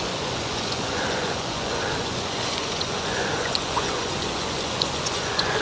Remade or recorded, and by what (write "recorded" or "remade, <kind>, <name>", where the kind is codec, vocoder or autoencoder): remade, vocoder, Vocos